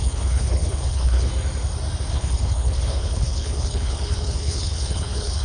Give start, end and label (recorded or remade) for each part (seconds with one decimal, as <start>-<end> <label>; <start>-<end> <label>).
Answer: 0.0-1.3 remade; 1.3-2.1 recorded; 2.1-5.4 remade